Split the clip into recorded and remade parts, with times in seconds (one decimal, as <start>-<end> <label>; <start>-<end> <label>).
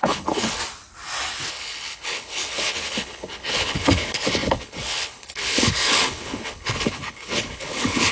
0.0-0.6 remade; 0.6-1.5 recorded; 1.5-8.1 remade